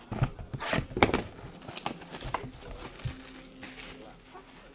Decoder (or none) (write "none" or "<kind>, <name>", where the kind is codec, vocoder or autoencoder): none